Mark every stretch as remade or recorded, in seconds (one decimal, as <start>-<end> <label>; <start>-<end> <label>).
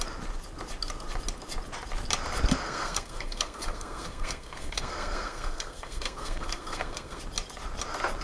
0.0-2.6 recorded; 2.6-7.2 remade; 7.2-8.2 recorded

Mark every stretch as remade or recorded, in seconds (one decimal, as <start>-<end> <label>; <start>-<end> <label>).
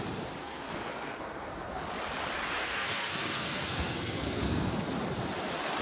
0.0-0.4 recorded; 0.4-1.8 remade; 1.8-2.6 recorded; 2.6-4.7 remade; 4.7-5.8 recorded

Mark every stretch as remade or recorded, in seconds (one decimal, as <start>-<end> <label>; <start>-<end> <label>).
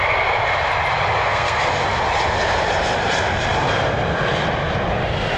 0.0-1.2 recorded; 1.2-1.8 remade; 1.8-5.4 recorded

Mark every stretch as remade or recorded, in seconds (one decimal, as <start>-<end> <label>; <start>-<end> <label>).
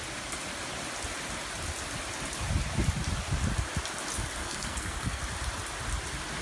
0.0-4.4 recorded; 4.4-5.2 remade; 5.2-6.4 recorded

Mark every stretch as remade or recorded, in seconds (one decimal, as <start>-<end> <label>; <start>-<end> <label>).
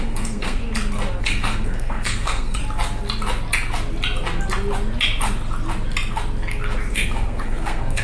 0.0-0.6 remade; 0.6-1.2 recorded; 1.2-2.6 remade; 2.6-6.9 recorded; 6.9-8.0 remade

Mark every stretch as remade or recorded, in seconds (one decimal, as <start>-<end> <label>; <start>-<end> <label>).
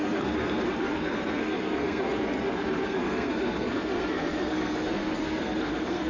0.0-6.1 remade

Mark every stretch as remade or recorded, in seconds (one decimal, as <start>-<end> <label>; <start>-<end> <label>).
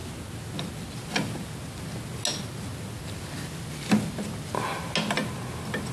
0.0-5.9 recorded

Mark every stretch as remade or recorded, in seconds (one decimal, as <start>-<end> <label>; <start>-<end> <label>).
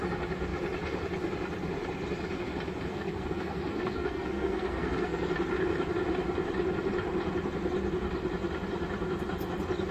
0.0-2.9 recorded; 2.9-5.3 remade; 5.3-9.9 recorded